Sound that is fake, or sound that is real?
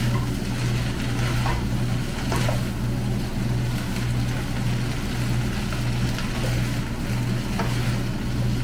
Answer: real